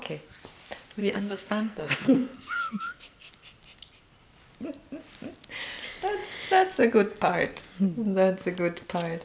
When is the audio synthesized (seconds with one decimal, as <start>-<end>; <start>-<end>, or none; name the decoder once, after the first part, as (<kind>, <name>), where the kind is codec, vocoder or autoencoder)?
1.0-3.3 (codec, SNAC)